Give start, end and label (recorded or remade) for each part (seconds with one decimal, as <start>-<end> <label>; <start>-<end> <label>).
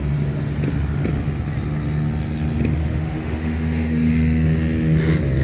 0.0-2.8 recorded; 2.8-4.1 remade; 4.1-5.4 recorded